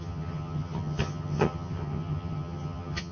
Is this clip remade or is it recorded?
remade